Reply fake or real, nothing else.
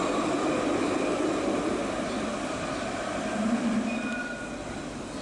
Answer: real